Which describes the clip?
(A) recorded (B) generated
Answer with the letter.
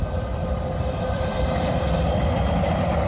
A